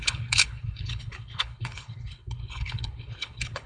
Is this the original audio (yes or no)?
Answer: no